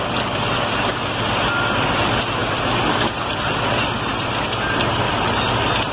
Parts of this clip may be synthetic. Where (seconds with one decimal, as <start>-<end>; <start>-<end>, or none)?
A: none